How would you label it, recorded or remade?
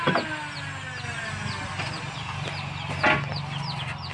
recorded